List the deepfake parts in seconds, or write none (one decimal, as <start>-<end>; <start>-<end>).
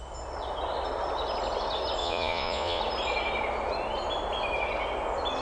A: 2.0-2.8